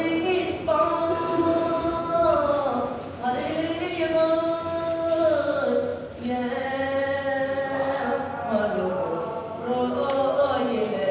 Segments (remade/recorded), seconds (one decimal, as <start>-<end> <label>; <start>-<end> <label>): 0.0-1.5 recorded; 1.5-3.5 remade; 3.5-10.4 recorded; 10.4-11.1 remade